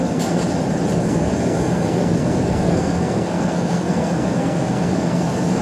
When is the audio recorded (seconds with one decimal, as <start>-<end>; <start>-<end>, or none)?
0.4-1.0